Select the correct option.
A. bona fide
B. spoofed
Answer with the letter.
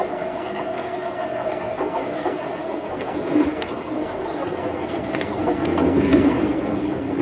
B